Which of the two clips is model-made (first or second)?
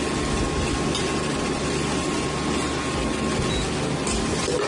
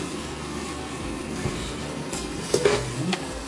second